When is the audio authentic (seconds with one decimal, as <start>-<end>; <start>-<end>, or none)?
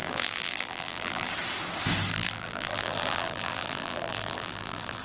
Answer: 1.3-2.1